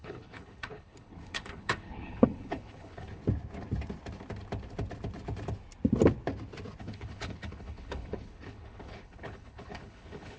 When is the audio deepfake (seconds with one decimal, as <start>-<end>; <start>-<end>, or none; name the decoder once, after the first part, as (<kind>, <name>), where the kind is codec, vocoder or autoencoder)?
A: 0.0-3.2 (codec, HILCodec); 6.8-10.4

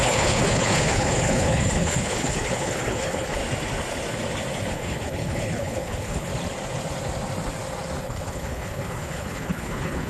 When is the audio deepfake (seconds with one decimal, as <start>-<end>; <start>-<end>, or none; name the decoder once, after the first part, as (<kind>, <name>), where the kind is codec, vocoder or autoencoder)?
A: 0.0-3.4 (codec, HILCodec); 4.7-6.3; 8.0-10.1

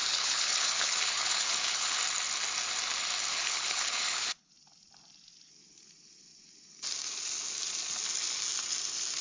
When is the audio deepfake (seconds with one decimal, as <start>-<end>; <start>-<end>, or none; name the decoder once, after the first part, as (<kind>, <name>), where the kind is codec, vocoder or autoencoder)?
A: 0.0-2.0 (codec, HILCodec); 3.3-4.5

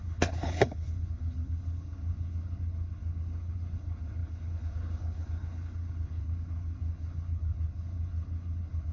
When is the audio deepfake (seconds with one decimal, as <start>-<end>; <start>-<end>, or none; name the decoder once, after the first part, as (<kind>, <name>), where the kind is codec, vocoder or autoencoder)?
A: 0.0-8.9 (codec, HILCodec)